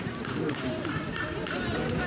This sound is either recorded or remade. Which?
recorded